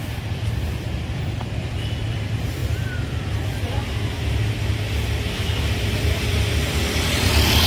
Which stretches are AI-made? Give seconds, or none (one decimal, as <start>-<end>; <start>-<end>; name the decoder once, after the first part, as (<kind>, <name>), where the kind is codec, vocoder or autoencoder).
0.0-1.4 (vocoder, BigVGAN v2); 2.1-2.6; 6.2-7.7